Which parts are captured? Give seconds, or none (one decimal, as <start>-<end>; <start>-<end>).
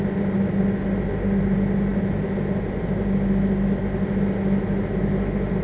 0.0-5.6